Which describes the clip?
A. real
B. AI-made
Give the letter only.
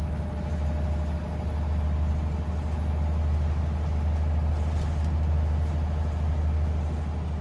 A